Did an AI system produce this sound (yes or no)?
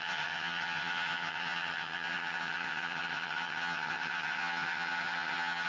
yes